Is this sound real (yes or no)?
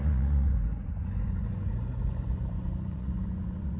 no